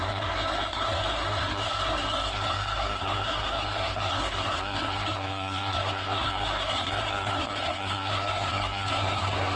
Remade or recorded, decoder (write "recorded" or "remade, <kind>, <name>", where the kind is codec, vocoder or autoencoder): remade, codec, SNAC